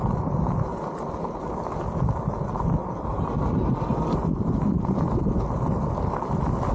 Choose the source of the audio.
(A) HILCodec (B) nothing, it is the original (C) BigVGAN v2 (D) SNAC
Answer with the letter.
B